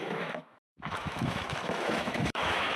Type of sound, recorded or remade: remade